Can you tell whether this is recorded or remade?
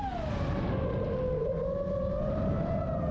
recorded